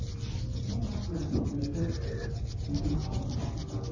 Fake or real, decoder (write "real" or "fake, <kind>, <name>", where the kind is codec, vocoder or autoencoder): real